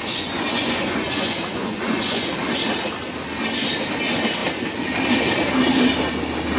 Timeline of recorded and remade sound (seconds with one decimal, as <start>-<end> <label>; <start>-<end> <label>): 0.0-2.3 remade; 2.3-6.6 recorded